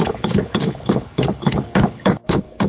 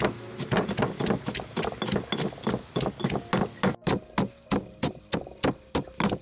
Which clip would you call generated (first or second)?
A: first